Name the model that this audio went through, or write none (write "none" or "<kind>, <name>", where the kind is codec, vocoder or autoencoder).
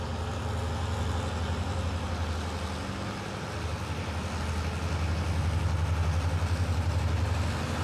none